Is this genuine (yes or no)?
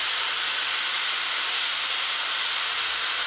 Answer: yes